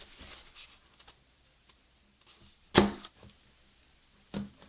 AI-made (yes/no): no